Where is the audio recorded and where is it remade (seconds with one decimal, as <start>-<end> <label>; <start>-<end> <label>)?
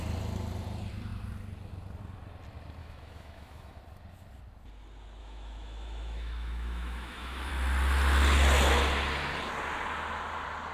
0.0-2.8 recorded; 2.8-3.8 remade; 3.8-5.2 recorded; 5.2-7.5 remade; 7.5-10.7 recorded